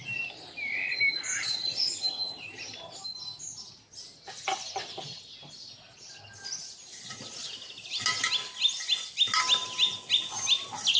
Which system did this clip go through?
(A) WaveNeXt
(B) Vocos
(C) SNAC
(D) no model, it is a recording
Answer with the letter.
D